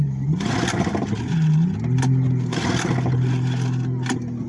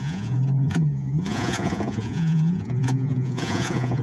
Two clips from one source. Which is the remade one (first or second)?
second